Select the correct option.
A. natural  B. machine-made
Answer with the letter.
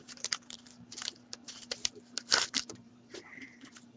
B